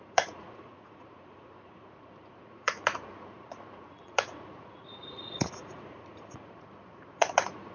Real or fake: fake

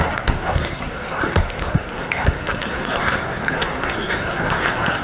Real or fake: fake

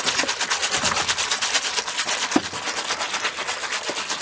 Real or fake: real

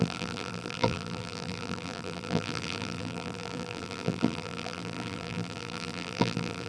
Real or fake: fake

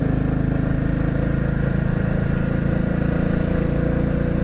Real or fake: real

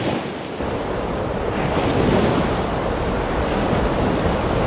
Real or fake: real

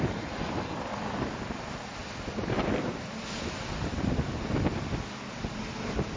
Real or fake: real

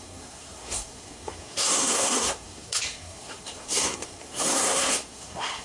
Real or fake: fake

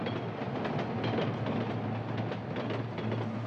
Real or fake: real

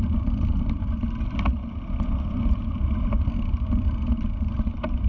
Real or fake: real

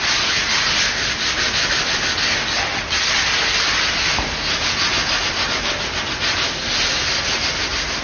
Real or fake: real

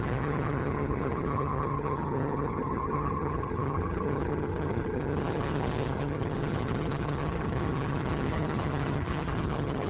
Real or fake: fake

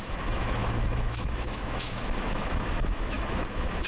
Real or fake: fake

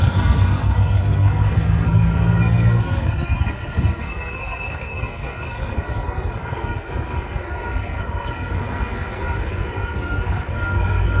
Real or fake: fake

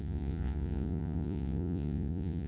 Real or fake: fake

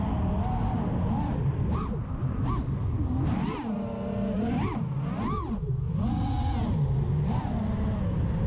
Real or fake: real